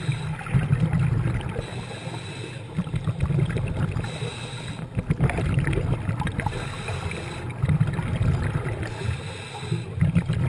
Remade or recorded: recorded